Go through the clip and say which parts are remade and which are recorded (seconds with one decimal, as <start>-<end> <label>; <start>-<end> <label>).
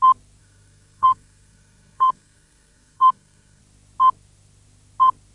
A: 0.0-0.4 recorded; 0.4-3.6 remade; 3.6-5.3 recorded